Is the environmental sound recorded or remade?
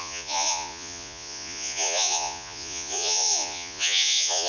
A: remade